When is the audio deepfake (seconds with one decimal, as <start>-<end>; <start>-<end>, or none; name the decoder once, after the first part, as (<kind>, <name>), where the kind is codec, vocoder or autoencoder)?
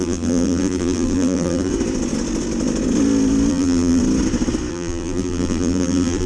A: 0.0-1.7 (vocoder, BigVGAN v2); 3.5-4.0; 4.7-6.3